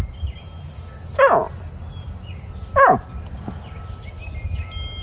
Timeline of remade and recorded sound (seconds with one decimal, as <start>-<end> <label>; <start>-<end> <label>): 0.0-5.0 recorded